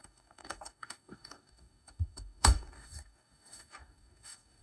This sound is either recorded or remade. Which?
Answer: remade